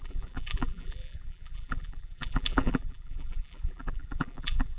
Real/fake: fake